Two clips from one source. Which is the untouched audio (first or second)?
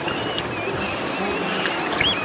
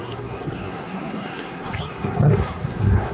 first